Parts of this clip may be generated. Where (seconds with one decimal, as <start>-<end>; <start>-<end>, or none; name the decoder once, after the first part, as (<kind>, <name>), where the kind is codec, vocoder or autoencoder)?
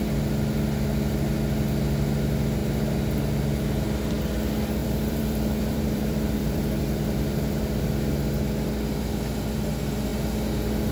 4.8-7.6 (vocoder, BigVGAN v2)